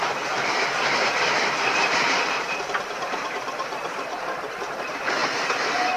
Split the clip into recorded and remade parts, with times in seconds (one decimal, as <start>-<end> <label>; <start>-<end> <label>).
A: 0.0-5.2 remade; 5.2-6.0 recorded